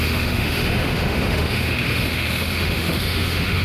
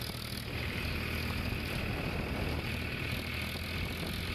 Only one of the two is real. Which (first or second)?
second